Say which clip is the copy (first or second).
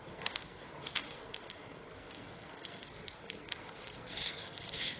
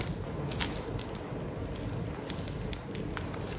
first